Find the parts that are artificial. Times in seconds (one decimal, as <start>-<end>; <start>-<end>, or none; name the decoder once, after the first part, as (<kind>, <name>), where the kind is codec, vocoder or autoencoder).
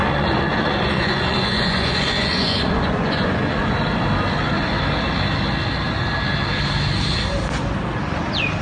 0.0-3.6 (vocoder, Vocos)